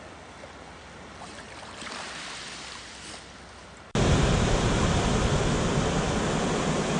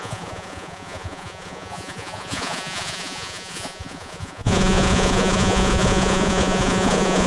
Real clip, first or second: first